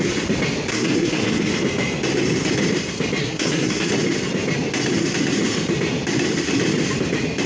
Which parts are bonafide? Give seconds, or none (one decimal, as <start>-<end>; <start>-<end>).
0.0-0.7; 1.5-3.2; 3.9-7.5